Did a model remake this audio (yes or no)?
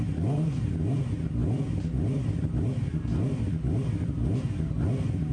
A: no